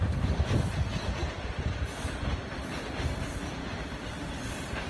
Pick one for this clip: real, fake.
real